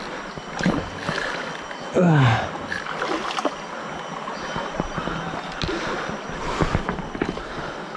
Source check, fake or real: real